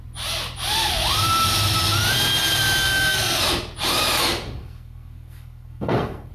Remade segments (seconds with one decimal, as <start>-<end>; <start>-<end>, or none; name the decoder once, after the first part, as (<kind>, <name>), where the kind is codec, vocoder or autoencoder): 2.8-3.4 (codec, SNAC); 4.6-6.3